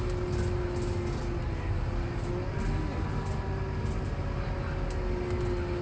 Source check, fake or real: real